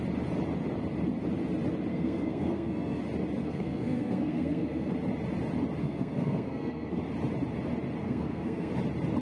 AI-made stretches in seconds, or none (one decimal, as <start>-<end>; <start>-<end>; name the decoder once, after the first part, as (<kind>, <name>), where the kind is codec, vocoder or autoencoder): 1.9-3.0 (codec, SNAC); 3.4-4.9; 5.8-7.0; 8.0-8.7